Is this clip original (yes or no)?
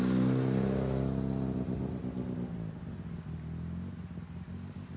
yes